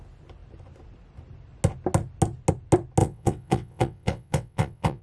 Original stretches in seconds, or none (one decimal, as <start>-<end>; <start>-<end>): 0.0-3.0